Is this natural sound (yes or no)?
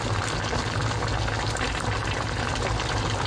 yes